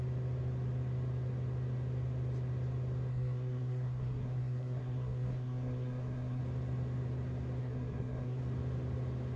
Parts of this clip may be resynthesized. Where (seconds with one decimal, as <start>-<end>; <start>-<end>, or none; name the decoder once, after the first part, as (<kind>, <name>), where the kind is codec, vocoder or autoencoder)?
3.1-6.4 (codec, SNAC); 7.6-8.4